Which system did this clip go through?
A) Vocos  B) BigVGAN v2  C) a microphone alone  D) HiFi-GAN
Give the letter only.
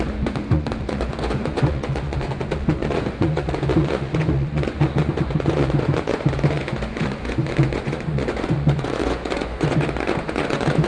A